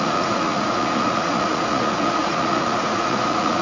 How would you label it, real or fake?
fake